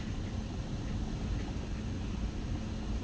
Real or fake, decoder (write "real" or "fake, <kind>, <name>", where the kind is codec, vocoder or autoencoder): real